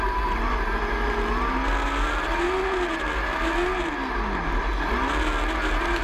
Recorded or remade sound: recorded